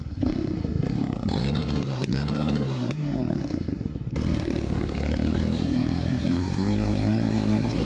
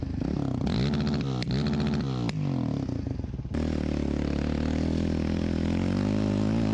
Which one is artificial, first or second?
first